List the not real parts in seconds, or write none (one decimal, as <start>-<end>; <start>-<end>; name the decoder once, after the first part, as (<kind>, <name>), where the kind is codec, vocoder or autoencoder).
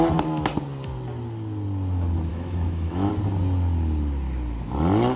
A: 2.3-3.1 (autoencoder, DAC-VAE)